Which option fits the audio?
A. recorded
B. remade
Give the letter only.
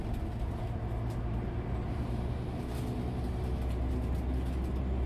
A